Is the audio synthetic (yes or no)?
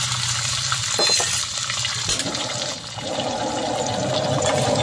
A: no